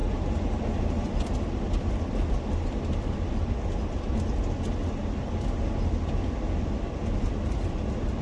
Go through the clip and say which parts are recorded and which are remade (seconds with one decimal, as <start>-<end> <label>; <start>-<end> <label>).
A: 0.0-8.2 recorded